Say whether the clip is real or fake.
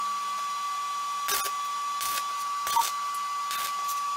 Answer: real